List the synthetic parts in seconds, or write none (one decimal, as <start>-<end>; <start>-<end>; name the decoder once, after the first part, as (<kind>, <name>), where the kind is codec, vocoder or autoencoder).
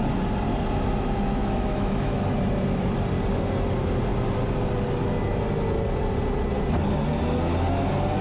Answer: 1.4-2.2 (autoencoder, DAC-VAE)